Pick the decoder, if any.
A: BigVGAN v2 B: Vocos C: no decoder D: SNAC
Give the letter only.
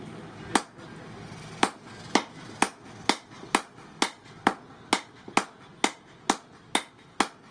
C